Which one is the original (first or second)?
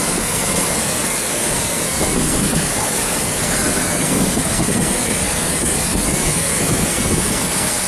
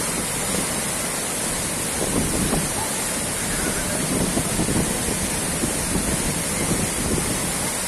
second